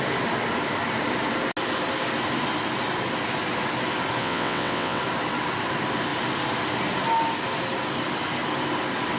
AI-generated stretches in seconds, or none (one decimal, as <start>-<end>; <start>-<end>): 4.2-5.0